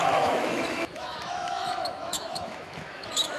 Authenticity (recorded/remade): remade